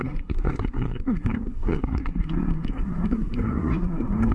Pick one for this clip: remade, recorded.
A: remade